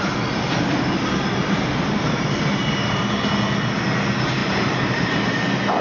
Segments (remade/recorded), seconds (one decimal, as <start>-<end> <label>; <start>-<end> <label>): 0.0-1.4 recorded; 1.4-3.3 remade; 3.3-4.4 recorded; 4.4-5.1 remade; 5.1-5.8 recorded